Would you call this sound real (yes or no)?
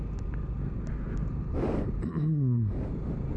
yes